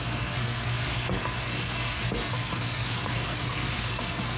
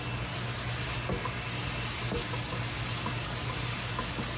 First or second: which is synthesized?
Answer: first